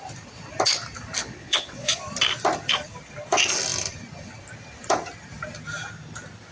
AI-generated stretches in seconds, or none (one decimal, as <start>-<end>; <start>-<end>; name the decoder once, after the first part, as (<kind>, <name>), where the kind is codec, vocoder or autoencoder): 1.2-2.0 (vocoder, Vocos)